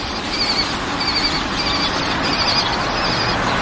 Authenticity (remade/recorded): recorded